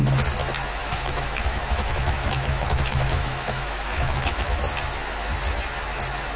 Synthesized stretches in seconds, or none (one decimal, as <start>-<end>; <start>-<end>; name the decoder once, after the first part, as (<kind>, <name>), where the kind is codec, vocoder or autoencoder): 0.8-4.6 (autoencoder, DAC-VAE)